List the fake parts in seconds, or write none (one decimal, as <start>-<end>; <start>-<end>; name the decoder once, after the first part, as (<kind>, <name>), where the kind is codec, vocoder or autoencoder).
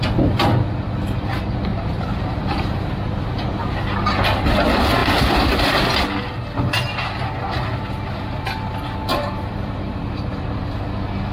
1.7-2.9 (vocoder, BigVGAN v2); 9.1-10.8